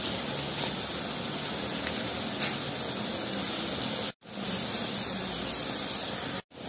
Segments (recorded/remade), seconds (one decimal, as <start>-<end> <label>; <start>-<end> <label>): 0.0-6.7 recorded